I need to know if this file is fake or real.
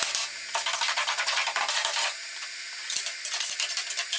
real